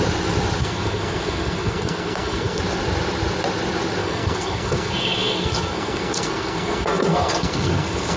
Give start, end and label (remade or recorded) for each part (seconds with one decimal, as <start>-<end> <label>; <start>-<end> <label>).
0.0-0.6 recorded; 0.6-2.6 remade; 2.6-4.0 recorded; 4.0-8.2 remade